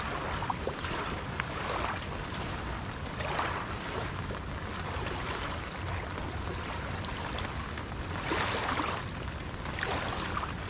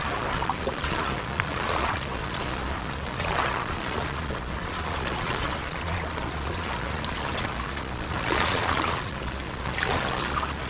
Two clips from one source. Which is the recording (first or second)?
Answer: first